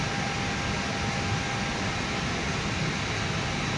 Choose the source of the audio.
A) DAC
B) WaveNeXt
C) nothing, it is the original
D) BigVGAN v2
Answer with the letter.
C